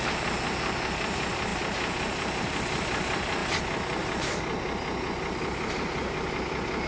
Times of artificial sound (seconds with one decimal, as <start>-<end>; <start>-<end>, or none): none